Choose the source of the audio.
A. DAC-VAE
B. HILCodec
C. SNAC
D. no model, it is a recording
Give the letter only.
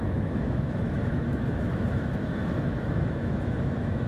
A